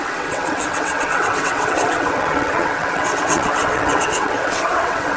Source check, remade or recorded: remade